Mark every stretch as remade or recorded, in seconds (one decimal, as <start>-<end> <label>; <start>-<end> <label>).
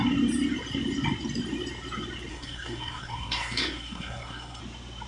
0.0-2.3 recorded; 2.3-4.6 remade; 4.6-5.1 recorded